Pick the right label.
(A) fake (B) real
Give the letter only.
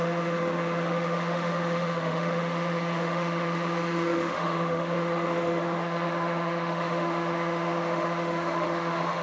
A